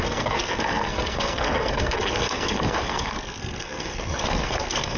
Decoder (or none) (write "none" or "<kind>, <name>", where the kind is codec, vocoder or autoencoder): codec, SNAC